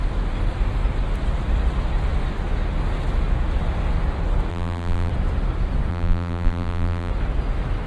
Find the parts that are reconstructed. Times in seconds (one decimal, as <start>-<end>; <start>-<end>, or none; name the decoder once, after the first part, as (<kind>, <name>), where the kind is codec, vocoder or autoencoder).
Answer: 4.5-5.1 (vocoder, BigVGAN v2); 5.9-7.1